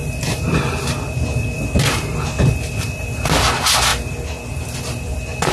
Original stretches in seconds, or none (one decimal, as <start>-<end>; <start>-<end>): 3.1-3.9